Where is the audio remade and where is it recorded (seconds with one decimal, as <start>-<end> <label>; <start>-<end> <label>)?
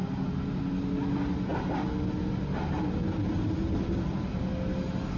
0.0-5.2 recorded